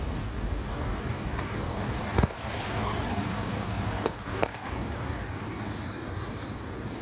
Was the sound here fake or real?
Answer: fake